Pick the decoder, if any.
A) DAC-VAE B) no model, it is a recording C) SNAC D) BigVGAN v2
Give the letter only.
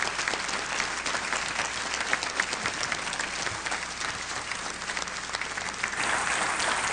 B